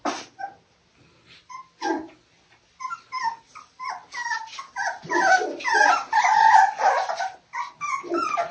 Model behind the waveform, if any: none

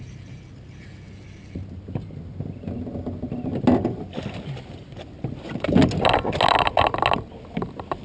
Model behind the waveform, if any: none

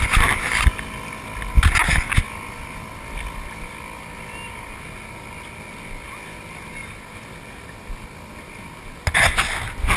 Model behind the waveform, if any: none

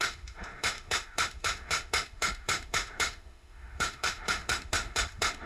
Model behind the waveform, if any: autoencoder, DAC-VAE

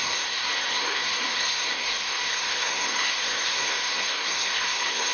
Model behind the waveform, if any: codec, SNAC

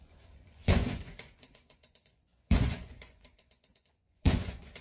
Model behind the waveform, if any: vocoder, Vocos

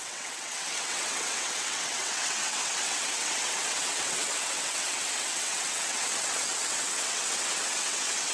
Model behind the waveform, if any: vocoder, WaveNeXt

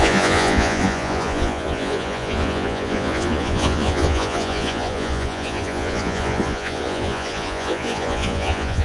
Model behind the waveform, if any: vocoder, Vocos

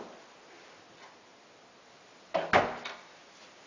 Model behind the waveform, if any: none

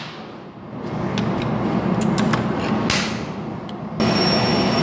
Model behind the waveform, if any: none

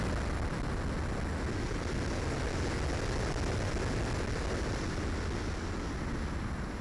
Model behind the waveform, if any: none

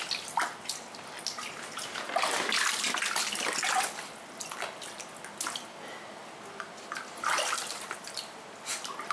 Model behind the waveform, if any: none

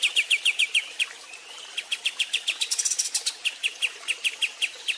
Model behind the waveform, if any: none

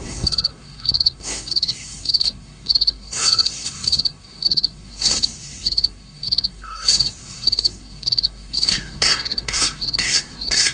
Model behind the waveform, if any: codec, SNAC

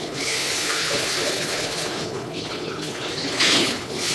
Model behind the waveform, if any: codec, HILCodec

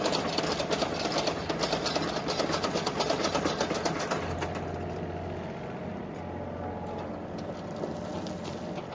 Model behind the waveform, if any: none